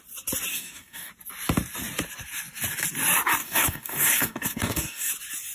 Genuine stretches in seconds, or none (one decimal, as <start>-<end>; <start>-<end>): 0.0-0.5; 1.1-3.4; 5.1-5.5